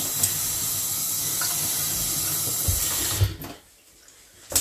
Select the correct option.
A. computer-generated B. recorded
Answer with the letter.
B